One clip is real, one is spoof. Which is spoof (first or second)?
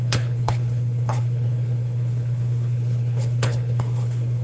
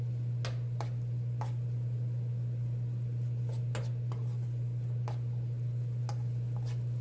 first